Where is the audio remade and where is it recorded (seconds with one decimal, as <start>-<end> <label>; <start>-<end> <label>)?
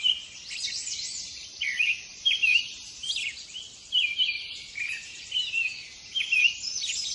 0.0-7.1 recorded